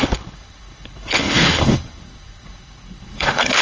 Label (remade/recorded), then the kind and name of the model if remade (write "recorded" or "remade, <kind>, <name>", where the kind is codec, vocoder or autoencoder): remade, codec, HILCodec